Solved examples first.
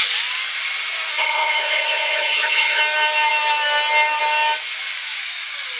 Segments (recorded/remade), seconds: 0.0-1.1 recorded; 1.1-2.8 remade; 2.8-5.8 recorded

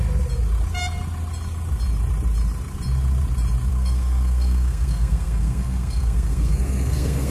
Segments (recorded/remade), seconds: 0.0-3.7 recorded; 3.7-7.3 remade

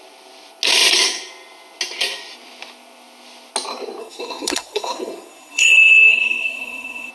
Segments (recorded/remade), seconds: 0.0-4.0 recorded; 4.0-7.1 remade